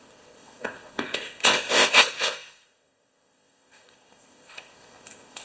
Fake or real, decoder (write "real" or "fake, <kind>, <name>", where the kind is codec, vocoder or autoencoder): fake, codec, ZipCodec